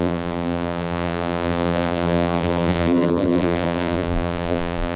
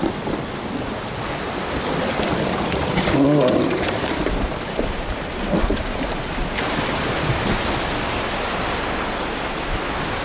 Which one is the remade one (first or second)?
first